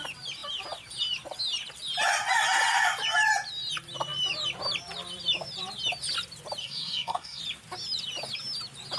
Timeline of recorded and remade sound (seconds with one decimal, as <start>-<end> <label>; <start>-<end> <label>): 0.0-6.6 recorded; 6.6-7.4 remade; 7.4-9.0 recorded